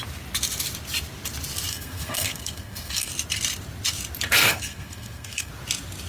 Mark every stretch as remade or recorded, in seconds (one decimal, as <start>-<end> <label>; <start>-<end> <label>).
0.0-1.7 recorded; 1.7-3.1 remade; 3.1-4.4 recorded; 4.4-5.5 remade; 5.5-6.1 recorded